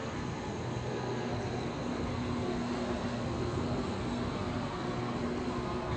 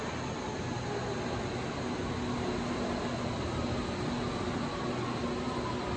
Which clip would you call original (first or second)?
second